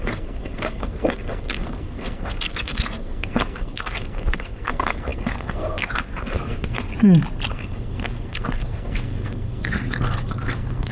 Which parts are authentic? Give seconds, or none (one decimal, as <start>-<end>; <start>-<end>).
6.9-7.5